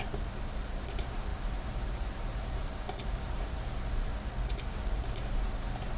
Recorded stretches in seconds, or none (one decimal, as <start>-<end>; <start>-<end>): 4.1-4.7